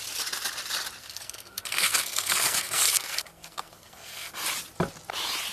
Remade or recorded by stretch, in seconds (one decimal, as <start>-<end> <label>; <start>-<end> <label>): 0.0-1.0 recorded; 1.0-4.3 remade; 4.3-5.5 recorded